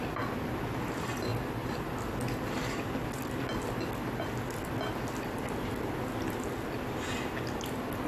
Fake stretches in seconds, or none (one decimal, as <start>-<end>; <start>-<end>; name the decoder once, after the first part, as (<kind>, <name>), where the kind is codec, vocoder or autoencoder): none